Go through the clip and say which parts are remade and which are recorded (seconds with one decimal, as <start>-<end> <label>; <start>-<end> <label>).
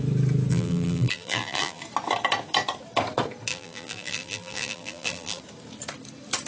0.0-0.5 recorded; 0.5-1.8 remade; 1.8-3.5 recorded; 3.5-5.4 remade; 5.4-6.5 recorded